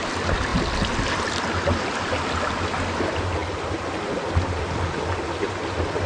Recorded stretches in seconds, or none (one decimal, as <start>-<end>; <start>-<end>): 0.0-6.1